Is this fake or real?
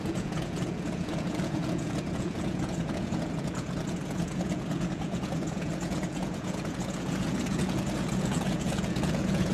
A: fake